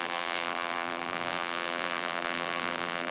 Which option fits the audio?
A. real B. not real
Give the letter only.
B